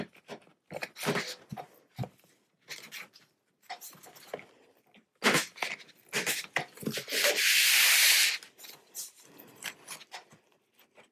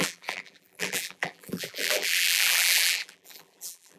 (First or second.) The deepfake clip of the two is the second